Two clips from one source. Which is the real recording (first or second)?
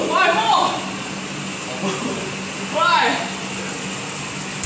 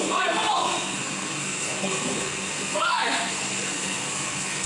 first